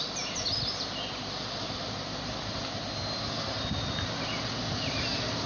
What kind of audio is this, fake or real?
real